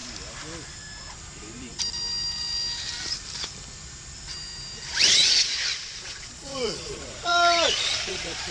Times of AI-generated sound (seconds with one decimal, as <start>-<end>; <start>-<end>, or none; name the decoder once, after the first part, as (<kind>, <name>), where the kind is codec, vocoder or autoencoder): 5.1-8.5 (vocoder, Vocos)